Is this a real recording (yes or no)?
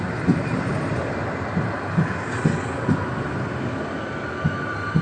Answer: yes